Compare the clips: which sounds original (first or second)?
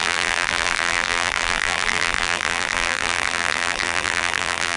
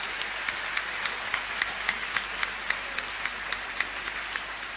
second